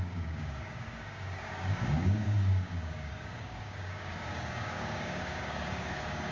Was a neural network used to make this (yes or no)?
yes